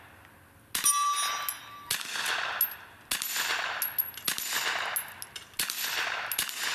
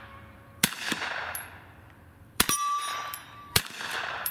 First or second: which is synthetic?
second